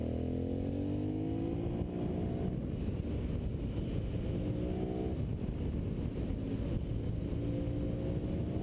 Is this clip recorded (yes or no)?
yes